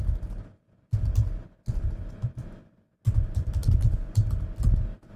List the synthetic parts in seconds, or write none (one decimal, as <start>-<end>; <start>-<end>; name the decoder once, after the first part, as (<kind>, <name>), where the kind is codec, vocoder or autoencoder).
3.6-4.4 (vocoder, BigVGAN v2)